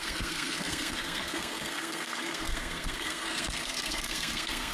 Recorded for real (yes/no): no